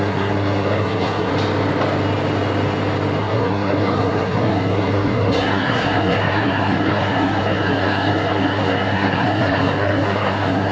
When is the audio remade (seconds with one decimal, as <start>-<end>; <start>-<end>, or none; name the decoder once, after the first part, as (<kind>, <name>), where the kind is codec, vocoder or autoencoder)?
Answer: 0.0-1.3 (codec, SNAC); 3.2-10.7